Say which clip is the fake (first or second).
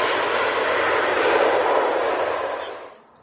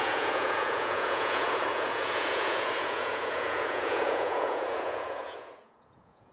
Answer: second